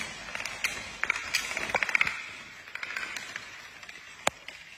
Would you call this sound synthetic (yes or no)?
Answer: no